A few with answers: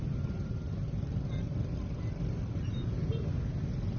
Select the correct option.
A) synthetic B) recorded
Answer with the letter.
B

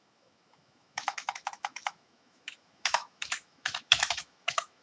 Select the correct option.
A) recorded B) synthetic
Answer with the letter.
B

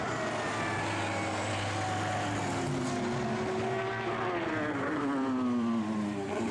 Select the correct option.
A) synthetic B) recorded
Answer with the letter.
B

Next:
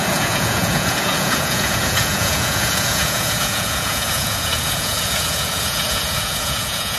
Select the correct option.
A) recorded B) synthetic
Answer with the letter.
B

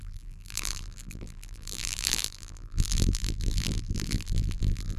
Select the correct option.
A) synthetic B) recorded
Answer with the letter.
A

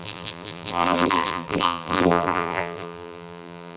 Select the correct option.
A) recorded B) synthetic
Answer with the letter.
B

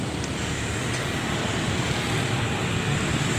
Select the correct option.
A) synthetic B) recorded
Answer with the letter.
B